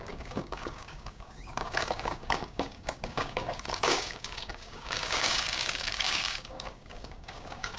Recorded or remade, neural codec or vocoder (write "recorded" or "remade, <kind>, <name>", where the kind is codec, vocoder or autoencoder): remade, codec, DAC